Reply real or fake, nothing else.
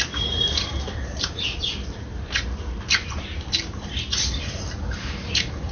fake